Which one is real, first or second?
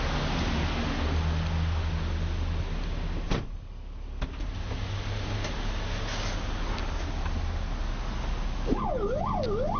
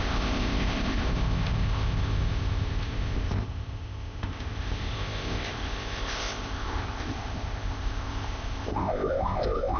first